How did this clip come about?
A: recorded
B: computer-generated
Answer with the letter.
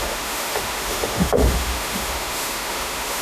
B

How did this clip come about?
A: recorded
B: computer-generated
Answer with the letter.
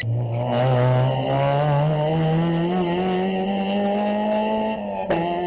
A